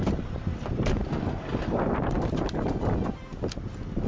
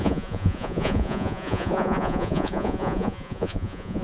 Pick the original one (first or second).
first